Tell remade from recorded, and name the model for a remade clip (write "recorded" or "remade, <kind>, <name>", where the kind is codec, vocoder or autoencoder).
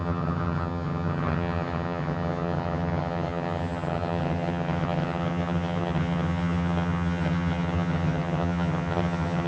remade, vocoder, HiFi-GAN